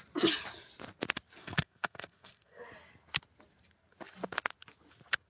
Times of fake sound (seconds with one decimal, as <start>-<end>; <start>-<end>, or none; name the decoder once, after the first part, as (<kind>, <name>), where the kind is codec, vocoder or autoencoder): 1.4-2.6 (codec, SNAC)